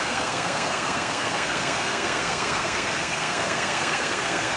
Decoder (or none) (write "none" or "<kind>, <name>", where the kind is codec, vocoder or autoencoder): codec, SNAC